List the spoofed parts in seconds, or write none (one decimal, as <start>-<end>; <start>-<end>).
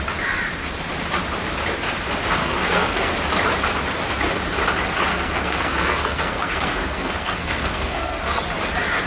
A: 2.4-3.1; 5.1-8.4